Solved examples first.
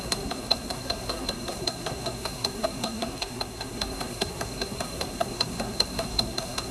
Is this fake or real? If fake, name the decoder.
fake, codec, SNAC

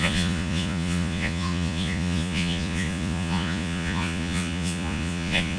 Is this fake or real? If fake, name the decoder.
fake, vocoder, Vocos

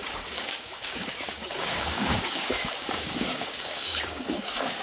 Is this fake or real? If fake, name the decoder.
fake, codec, DAC